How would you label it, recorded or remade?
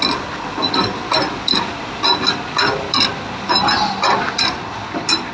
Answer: recorded